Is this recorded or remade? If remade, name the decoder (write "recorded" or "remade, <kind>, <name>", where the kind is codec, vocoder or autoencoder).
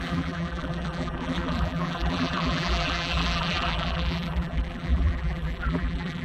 remade, vocoder, BigVGAN v2